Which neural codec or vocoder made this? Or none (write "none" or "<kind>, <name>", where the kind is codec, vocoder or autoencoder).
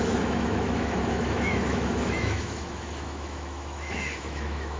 autoencoder, DAC-VAE